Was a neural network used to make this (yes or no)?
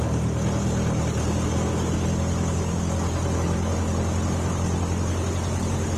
no